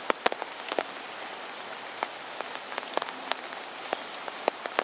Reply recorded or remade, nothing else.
recorded